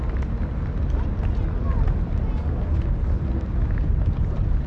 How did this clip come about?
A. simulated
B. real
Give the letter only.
B